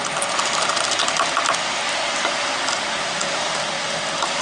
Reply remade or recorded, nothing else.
recorded